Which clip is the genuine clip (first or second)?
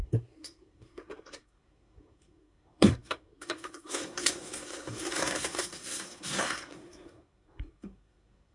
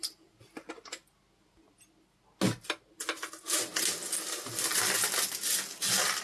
second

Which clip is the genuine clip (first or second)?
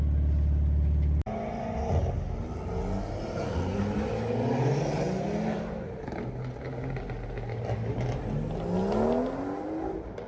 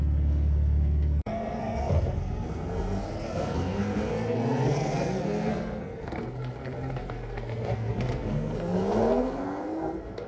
first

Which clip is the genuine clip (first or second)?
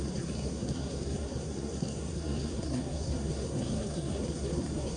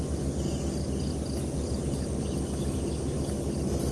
second